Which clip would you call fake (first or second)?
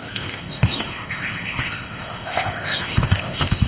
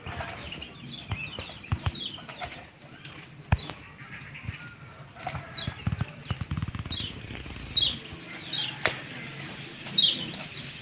first